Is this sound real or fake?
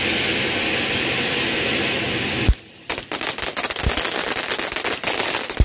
real